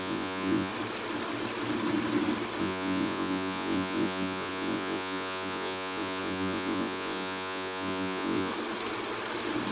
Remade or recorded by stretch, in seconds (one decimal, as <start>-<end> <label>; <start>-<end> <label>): 0.0-0.7 remade; 0.7-2.6 recorded; 2.6-8.5 remade; 8.5-9.7 recorded

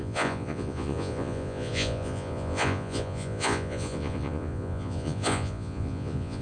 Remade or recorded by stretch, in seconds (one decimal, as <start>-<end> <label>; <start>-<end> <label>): 0.0-6.4 remade

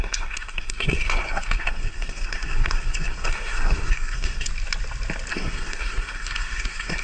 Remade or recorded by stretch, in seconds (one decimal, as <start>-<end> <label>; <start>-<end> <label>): 0.0-4.5 remade; 4.5-5.3 recorded; 5.3-7.0 remade

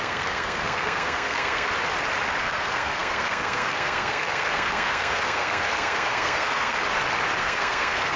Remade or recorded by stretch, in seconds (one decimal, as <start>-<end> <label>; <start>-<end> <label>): 0.0-1.7 remade; 1.7-2.4 recorded; 2.4-6.8 remade; 6.8-7.4 recorded; 7.4-8.2 remade

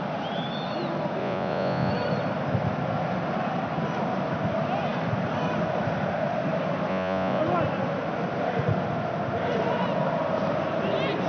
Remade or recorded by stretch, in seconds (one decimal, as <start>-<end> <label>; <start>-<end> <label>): 0.0-1.2 recorded; 1.2-1.9 remade; 1.9-6.9 recorded; 6.9-7.4 remade; 7.4-11.3 recorded